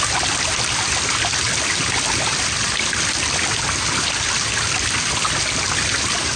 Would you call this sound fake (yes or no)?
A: no